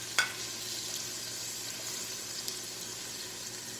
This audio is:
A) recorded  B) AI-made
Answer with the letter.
A